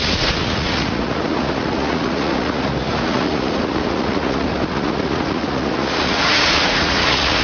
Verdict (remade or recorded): remade